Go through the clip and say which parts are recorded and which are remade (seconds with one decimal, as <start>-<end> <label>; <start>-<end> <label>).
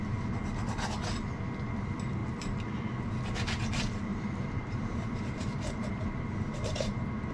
0.0-4.1 recorded; 4.1-5.9 remade; 5.9-7.3 recorded